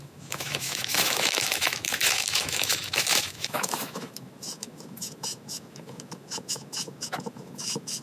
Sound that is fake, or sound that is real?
fake